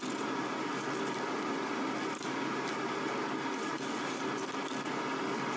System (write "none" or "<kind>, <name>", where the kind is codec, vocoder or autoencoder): none